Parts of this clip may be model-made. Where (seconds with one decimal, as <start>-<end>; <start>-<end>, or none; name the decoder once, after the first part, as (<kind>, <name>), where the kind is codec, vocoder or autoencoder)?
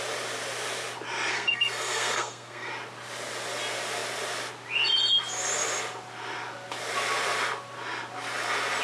1.3-2.7 (codec, SNAC)